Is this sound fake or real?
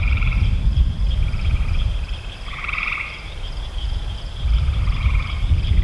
fake